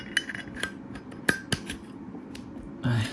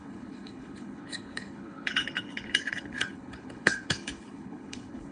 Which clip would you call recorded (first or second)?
first